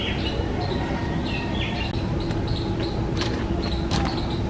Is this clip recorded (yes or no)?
yes